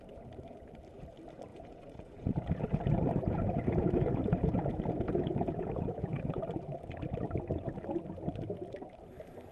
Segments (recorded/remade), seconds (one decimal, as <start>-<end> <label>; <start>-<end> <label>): 0.0-1.5 recorded; 1.5-6.4 remade; 6.4-9.5 recorded